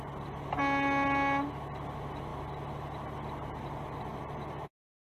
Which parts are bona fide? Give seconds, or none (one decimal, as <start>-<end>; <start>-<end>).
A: 0.0-5.0